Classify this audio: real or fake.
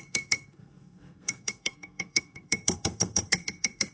fake